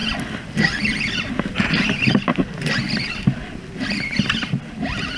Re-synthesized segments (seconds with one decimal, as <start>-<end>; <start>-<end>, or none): none